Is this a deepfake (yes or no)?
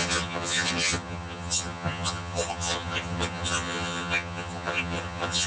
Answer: yes